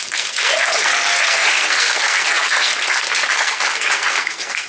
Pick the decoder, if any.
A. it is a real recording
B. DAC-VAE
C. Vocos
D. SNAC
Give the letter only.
D